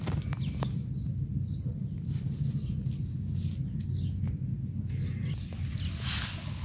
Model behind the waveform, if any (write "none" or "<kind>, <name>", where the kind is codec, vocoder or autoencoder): none